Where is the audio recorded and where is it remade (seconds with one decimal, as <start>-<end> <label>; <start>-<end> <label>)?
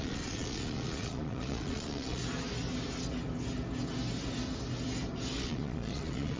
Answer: 0.0-2.2 remade; 2.2-5.4 recorded; 5.4-6.4 remade